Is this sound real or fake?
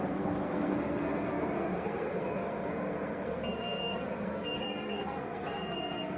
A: fake